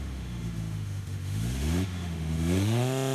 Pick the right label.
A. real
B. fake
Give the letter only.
B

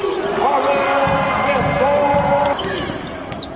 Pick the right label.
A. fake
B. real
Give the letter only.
B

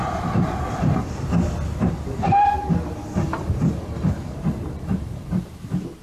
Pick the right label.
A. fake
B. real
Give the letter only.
B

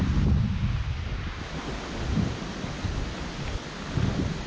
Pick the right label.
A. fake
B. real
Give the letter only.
B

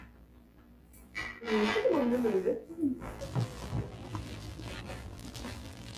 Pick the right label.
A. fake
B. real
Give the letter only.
A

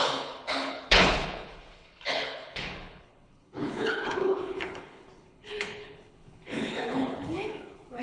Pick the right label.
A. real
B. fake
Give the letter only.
B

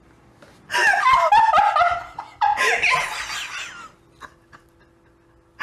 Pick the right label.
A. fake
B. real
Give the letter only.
B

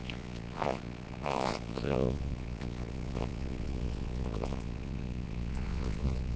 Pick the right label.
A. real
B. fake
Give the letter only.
B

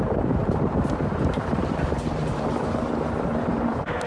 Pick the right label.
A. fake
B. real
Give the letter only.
A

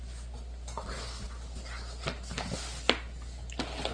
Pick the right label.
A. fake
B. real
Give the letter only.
B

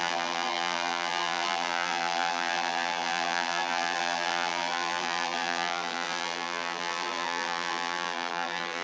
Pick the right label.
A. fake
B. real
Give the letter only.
A